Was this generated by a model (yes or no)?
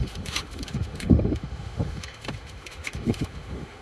yes